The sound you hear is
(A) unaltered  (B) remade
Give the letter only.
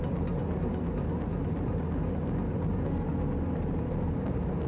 A